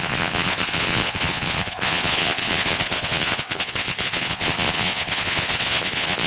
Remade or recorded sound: remade